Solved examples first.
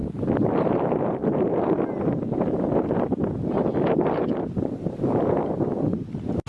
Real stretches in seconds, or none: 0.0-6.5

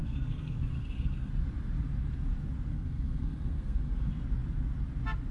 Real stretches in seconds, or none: 1.3-2.7; 4.1-5.3

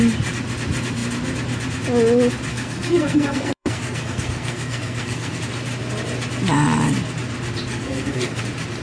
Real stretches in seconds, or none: 0.0-2.5; 5.4-7.7; 8.4-8.8

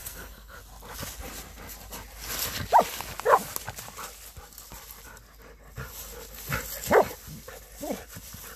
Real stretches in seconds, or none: 0.6-8.6